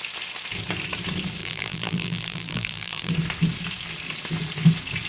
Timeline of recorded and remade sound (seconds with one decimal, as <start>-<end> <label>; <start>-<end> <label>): 0.0-1.4 recorded; 1.4-3.1 remade; 3.1-5.1 recorded

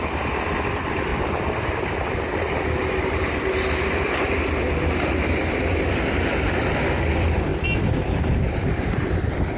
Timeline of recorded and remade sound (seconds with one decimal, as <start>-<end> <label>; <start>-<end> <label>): 0.0-1.1 remade; 1.1-4.6 recorded; 4.6-7.5 remade; 7.5-8.2 recorded; 8.2-9.6 remade

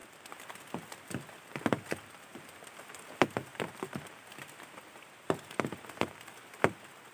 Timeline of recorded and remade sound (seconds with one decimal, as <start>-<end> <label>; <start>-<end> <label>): 0.0-2.8 remade; 2.8-7.1 recorded

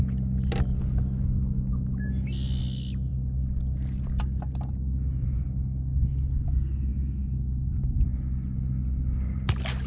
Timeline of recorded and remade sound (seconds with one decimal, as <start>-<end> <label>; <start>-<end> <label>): 0.0-9.9 recorded

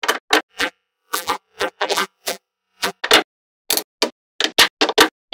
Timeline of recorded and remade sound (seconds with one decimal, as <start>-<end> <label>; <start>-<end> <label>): 0.0-0.5 recorded; 0.5-3.0 remade; 3.0-5.3 recorded

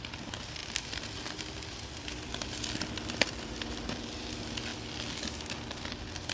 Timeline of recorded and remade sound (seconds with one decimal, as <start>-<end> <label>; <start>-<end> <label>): 0.0-0.6 recorded; 0.6-4.3 remade; 4.3-6.3 recorded